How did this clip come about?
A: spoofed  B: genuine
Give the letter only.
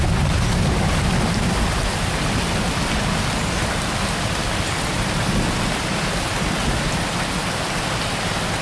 B